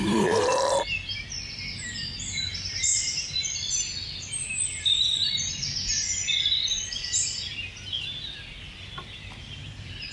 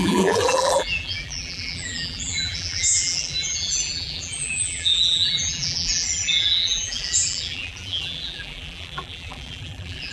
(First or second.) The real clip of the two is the first